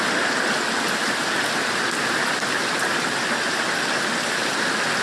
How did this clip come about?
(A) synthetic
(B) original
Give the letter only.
B